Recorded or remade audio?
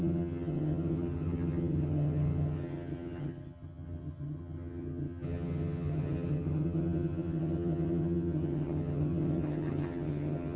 remade